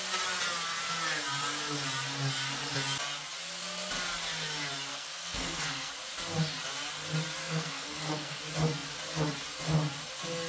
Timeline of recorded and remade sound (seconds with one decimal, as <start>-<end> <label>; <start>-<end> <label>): 0.0-4.9 recorded; 4.9-5.9 remade; 5.9-7.4 recorded; 7.4-8.4 remade; 8.4-10.5 recorded